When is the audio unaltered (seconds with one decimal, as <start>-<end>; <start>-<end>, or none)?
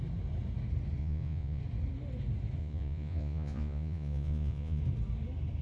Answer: 0.0-1.0; 1.6-2.6; 4.8-5.6